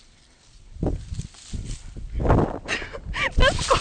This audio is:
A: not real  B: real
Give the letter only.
B